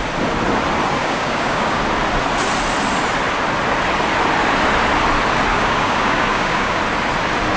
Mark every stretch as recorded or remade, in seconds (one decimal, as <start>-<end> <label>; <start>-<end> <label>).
0.0-1.0 recorded; 1.0-1.8 remade; 1.8-5.5 recorded; 5.5-6.8 remade; 6.8-7.6 recorded